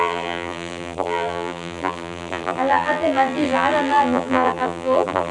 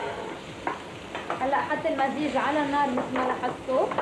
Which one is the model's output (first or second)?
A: first